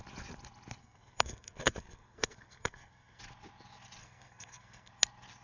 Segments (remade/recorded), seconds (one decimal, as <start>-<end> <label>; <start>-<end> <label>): 0.0-0.8 recorded; 0.8-3.2 remade; 3.2-4.0 recorded; 4.0-4.9 remade; 4.9-5.4 recorded